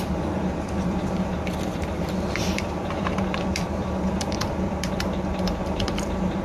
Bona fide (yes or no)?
no